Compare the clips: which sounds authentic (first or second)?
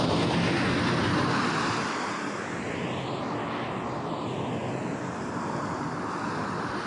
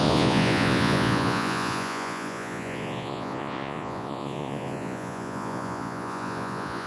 first